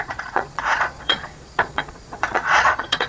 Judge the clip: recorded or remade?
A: remade